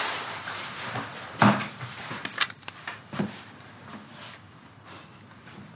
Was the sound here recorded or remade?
remade